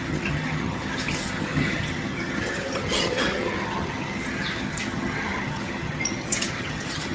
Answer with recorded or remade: remade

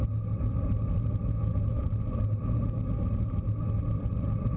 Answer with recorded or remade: recorded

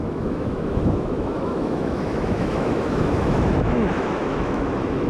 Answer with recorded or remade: remade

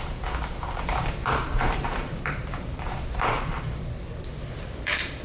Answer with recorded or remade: remade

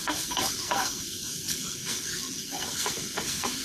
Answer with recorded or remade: remade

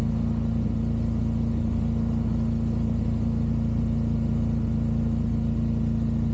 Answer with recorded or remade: recorded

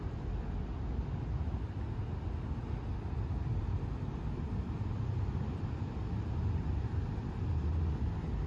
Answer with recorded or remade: recorded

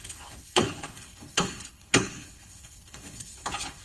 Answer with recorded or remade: remade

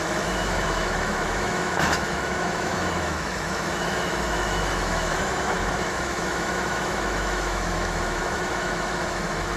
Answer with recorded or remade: remade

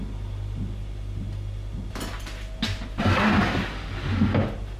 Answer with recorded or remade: recorded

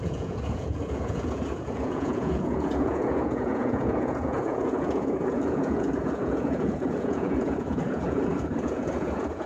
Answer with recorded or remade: remade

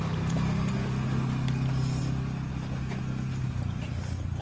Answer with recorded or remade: recorded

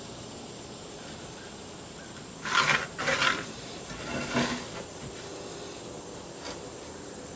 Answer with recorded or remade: recorded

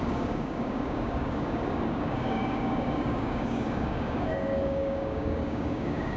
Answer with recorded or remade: remade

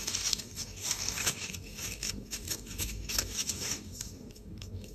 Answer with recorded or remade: remade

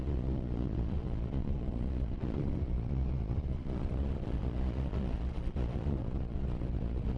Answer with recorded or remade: remade